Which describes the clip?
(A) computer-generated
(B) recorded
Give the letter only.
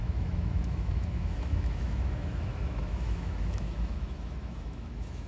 A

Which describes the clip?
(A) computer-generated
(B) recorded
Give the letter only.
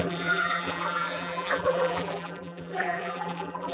A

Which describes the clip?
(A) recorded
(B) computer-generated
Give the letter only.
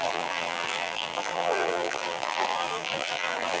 B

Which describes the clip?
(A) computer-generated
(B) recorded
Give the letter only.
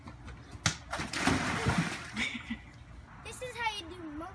B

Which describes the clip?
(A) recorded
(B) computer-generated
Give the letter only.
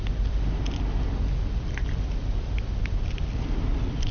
A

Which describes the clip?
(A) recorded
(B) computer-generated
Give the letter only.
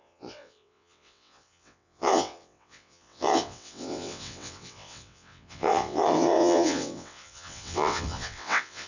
B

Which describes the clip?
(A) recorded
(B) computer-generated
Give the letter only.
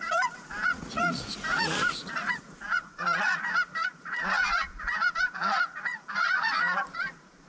B